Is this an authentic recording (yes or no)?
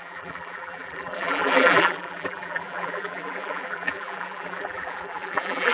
no